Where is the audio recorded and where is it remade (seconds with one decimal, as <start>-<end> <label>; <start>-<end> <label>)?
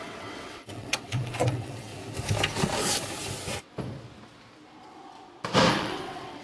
0.0-1.9 remade; 1.9-5.7 recorded; 5.7-6.4 remade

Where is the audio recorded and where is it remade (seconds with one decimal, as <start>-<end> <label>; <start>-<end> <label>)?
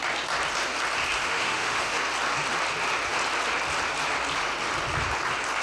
0.0-1.2 recorded; 1.2-2.0 remade; 2.0-5.6 recorded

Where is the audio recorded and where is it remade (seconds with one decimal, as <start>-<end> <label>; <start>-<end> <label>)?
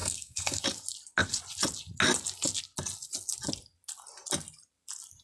0.0-0.6 remade; 0.6-5.2 recorded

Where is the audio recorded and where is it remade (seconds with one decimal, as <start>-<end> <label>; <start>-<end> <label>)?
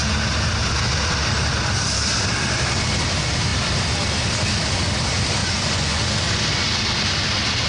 0.0-5.4 recorded; 5.4-6.0 remade; 6.0-7.7 recorded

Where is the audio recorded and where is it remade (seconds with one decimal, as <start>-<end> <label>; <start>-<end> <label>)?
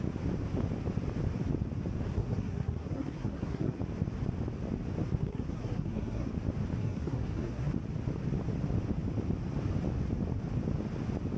0.0-2.1 recorded; 2.1-3.8 remade; 3.8-5.2 recorded; 5.2-6.3 remade; 6.3-6.8 recorded; 6.8-7.7 remade; 7.7-11.4 recorded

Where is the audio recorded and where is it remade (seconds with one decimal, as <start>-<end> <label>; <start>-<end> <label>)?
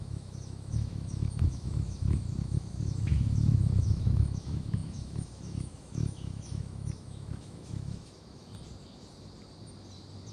0.0-8.5 remade; 8.5-10.3 recorded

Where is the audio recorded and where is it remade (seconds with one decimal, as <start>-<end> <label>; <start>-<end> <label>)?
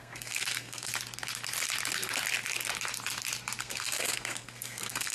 0.0-0.9 remade; 0.9-3.6 recorded; 3.6-5.1 remade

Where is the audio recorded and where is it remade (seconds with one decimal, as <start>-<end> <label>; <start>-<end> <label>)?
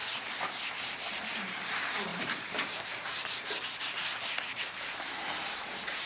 0.0-0.6 recorded; 0.6-6.1 remade